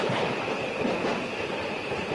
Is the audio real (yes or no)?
yes